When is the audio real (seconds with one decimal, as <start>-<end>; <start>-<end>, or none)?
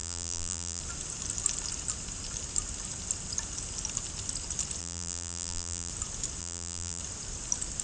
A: 0.8-4.8; 5.9-6.4; 7.0-7.8